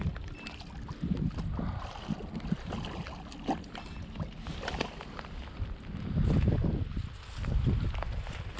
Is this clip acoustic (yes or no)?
yes